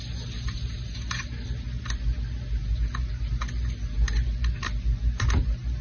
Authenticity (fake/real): real